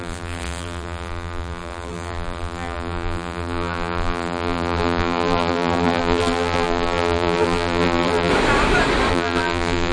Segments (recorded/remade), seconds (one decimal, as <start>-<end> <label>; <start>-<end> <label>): 0.0-8.3 remade; 8.3-9.1 recorded; 9.1-9.9 remade